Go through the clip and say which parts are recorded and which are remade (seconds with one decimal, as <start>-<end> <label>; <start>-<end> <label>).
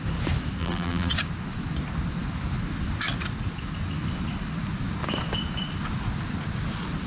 0.0-0.6 recorded; 0.6-1.1 remade; 1.1-7.1 recorded